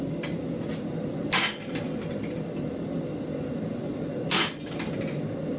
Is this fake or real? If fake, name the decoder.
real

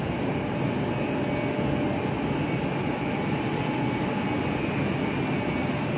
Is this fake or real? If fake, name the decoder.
real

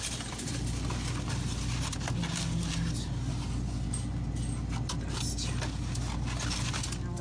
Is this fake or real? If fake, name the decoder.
real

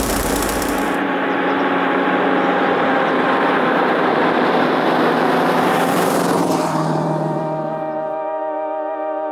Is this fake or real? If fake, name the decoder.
fake, vocoder, BigVGAN v2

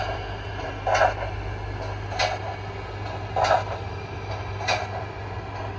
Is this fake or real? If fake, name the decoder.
real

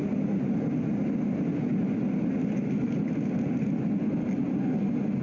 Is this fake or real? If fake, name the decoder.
real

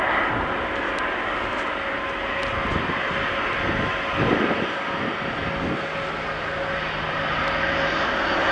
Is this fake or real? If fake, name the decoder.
real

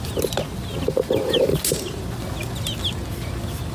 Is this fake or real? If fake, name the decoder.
real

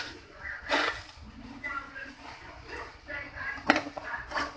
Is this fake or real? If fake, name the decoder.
fake, vocoder, Vocos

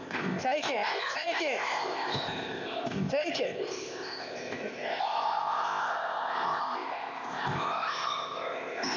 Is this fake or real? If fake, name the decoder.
fake, codec, ZipCodec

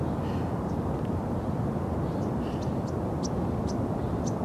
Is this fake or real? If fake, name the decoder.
real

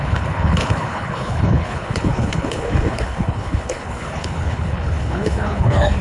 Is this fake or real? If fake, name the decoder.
fake, codec, HILCodec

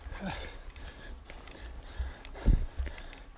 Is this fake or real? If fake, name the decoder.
real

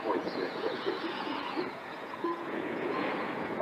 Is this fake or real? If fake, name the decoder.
fake, vocoder, Vocos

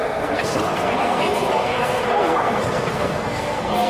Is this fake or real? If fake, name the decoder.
fake, codec, SNAC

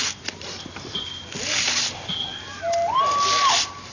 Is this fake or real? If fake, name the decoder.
real